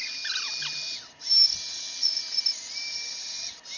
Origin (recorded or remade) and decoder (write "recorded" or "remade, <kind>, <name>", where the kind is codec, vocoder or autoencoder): recorded